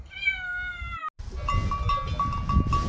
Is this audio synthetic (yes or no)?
no